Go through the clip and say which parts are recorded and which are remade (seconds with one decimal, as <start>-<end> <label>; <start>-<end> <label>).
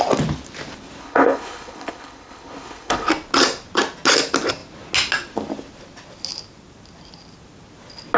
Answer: 0.0-1.0 recorded; 1.0-3.1 remade; 3.1-8.2 recorded